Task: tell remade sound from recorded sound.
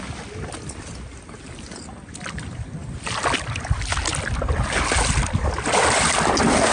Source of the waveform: recorded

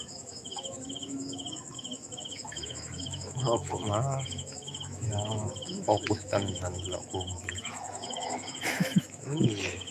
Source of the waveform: remade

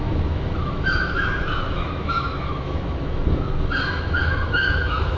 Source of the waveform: remade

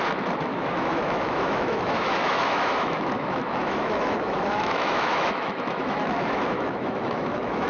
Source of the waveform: remade